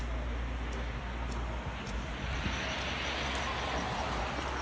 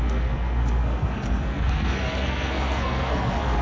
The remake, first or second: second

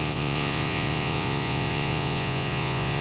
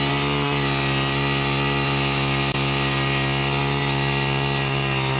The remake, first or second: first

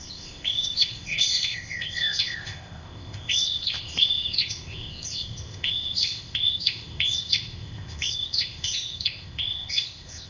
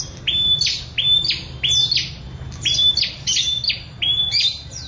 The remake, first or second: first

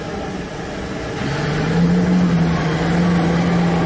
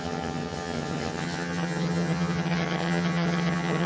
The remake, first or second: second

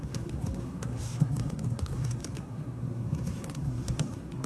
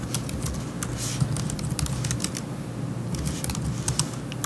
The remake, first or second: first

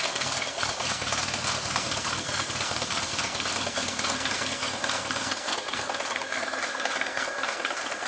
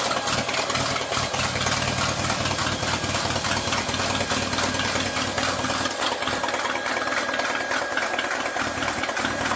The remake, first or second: first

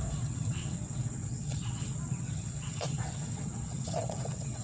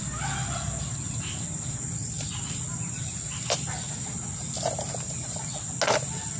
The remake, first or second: first